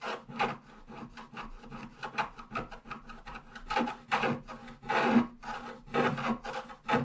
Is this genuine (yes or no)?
yes